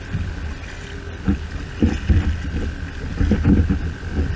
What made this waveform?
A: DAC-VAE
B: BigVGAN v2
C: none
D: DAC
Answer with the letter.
C